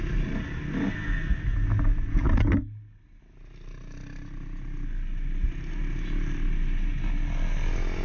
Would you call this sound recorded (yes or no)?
yes